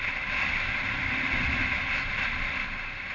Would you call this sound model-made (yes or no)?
no